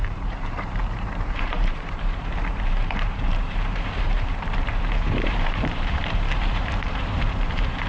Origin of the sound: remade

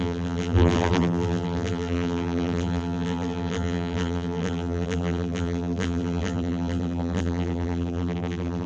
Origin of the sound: remade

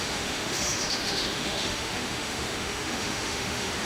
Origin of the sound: remade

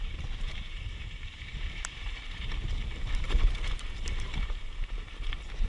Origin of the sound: remade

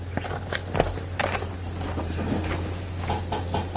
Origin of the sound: recorded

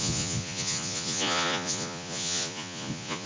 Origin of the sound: remade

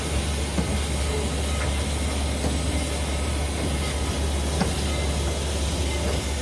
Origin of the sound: recorded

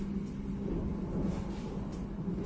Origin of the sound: recorded